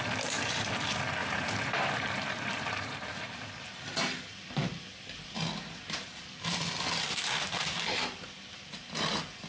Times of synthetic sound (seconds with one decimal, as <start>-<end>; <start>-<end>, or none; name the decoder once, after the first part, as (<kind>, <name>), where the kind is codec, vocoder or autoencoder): 1.2-4.2 (vocoder, BigVGAN v2)

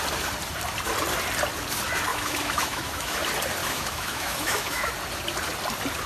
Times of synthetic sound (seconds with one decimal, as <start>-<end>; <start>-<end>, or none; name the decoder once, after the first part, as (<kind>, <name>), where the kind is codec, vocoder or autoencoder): 2.1-3.2 (autoencoder, DAC-VAE); 3.6-4.9

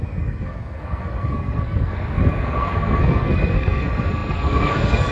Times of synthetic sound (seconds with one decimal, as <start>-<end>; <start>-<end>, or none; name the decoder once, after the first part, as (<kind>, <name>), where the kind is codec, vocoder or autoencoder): 0.0-5.1 (codec, SNAC)

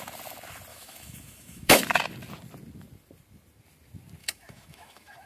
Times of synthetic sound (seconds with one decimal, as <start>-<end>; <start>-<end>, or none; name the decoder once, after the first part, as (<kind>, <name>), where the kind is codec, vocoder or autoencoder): 0.7-1.8 (autoencoder, DAC-VAE); 4.2-5.3

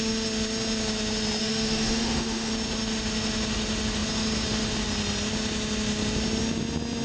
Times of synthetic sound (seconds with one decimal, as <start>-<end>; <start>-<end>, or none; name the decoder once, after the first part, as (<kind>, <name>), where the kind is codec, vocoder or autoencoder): 1.4-2.5 (autoencoder, DAC-VAE)

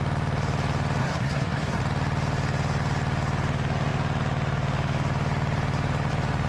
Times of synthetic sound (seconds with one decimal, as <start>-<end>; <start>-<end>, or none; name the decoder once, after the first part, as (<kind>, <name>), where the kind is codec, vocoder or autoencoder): 1.0-1.8 (codec, SNAC)

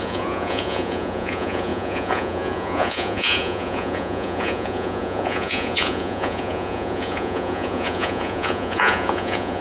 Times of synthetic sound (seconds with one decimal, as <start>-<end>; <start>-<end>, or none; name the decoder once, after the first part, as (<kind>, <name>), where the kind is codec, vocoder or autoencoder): 0.0-9.6 (vocoder, Vocos)

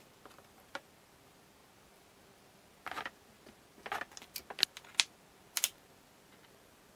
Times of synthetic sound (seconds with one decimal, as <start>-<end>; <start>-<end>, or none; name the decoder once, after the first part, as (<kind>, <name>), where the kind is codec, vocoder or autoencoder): 0.0-1.6 (vocoder, BigVGAN v2); 5.8-7.0